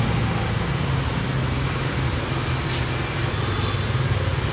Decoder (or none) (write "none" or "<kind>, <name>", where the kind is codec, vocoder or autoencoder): none